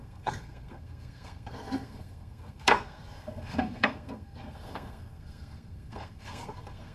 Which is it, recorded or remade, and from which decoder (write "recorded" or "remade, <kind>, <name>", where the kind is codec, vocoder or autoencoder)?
remade, codec, SNAC